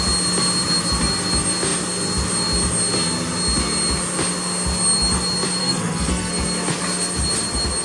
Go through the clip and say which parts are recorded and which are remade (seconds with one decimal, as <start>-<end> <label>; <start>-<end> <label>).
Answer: 0.0-5.6 recorded; 5.6-6.3 remade; 6.3-7.8 recorded